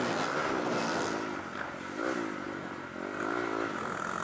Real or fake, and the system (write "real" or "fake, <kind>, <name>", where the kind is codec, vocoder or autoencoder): real